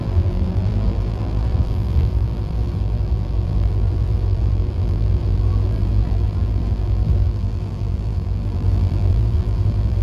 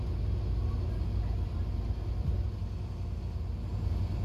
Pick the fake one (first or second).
first